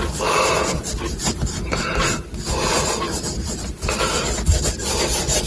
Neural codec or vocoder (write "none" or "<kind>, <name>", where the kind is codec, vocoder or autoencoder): none